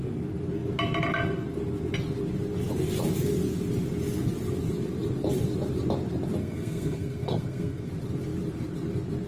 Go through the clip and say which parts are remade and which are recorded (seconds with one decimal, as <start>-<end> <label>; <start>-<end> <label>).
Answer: 0.0-6.4 recorded; 6.4-7.9 remade; 7.9-9.3 recorded